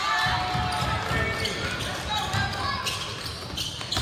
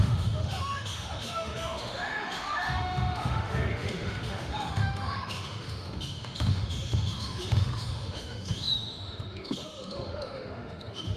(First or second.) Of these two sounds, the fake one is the second